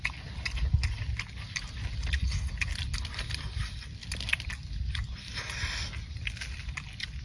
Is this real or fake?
real